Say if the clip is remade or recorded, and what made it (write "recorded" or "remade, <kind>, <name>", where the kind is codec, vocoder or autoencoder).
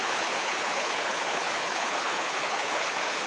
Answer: remade, codec, HILCodec